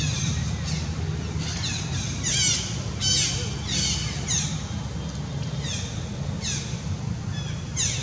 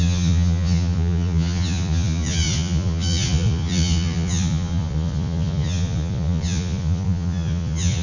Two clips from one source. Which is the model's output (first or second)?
second